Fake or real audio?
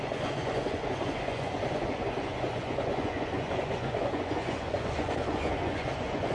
fake